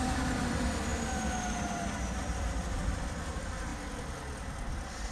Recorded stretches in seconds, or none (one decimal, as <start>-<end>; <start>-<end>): 0.9-1.7; 3.7-5.1